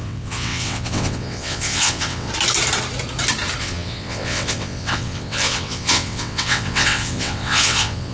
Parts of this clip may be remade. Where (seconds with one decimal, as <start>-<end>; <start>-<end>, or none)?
0.0-2.3; 3.6-8.1